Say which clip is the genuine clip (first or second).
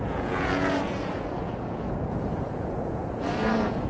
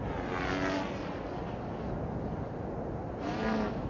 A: second